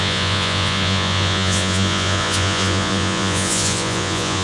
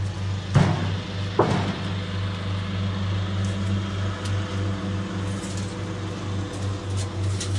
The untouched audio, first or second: second